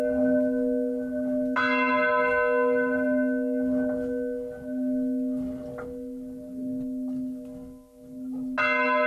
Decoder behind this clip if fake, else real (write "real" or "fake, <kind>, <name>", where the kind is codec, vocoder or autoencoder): real